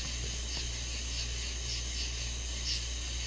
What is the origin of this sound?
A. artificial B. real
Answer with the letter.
B